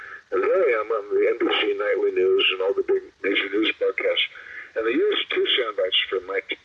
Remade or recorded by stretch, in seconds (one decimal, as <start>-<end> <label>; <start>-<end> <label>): 0.0-6.6 recorded